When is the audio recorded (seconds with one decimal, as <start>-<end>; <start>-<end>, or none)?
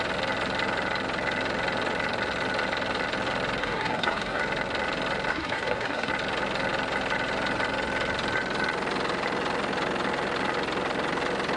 0.0-3.6; 4.4-5.3; 6.1-11.6